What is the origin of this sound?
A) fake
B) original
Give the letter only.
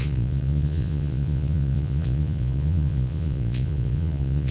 A